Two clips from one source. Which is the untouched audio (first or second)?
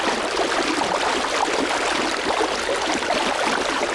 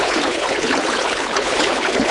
first